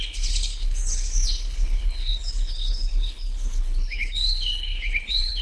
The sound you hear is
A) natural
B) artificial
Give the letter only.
B